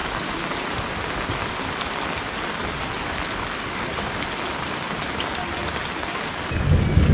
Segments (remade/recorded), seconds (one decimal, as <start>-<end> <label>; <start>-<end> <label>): 0.0-3.0 recorded; 3.0-3.9 remade; 3.9-7.1 recorded